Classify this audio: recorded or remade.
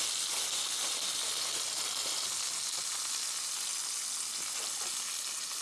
recorded